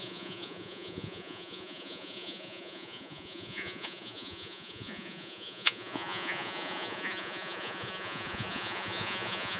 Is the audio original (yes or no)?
no